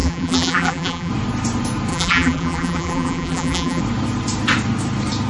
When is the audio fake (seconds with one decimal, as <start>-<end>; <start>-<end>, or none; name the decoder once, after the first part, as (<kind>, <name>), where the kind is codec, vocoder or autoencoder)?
0.0-1.1 (vocoder, BigVGAN v2); 1.9-3.8